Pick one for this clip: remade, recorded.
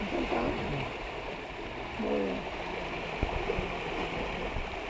recorded